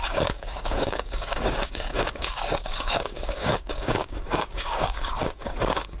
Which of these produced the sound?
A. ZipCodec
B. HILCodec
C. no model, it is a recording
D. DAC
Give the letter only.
D